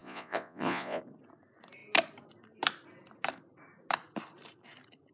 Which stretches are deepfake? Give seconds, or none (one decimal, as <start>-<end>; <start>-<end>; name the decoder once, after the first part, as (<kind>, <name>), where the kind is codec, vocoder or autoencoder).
0.0-1.0 (vocoder, Vocos)